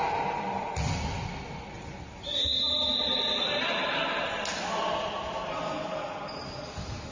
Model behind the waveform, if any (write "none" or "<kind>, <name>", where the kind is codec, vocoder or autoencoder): none